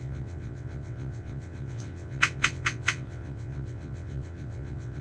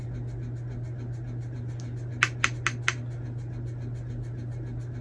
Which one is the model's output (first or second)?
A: first